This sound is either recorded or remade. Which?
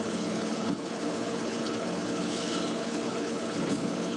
remade